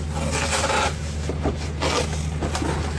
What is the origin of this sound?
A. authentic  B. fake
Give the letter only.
A